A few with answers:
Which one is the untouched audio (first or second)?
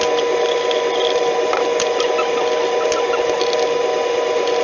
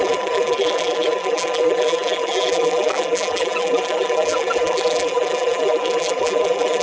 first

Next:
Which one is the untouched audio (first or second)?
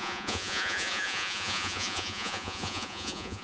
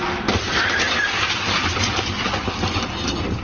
second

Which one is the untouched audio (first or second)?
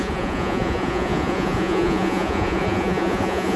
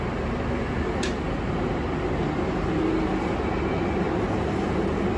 second